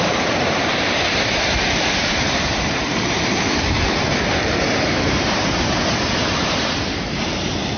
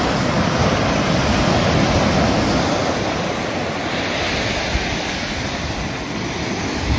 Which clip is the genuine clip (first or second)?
second